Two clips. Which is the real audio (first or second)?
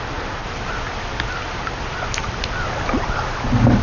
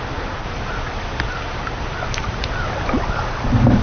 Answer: first